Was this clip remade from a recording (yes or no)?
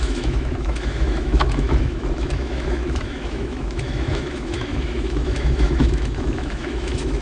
yes